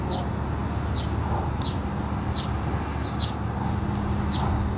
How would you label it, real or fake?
real